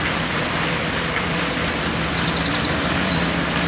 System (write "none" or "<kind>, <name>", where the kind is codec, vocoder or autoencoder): vocoder, BigVGAN v2